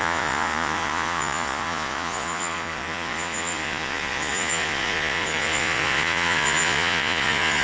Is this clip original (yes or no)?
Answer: no